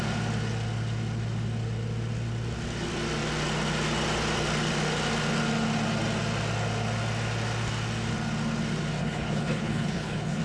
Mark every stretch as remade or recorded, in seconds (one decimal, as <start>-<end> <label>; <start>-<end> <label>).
0.0-9.0 recorded; 9.0-10.4 remade